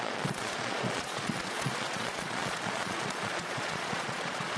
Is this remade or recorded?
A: remade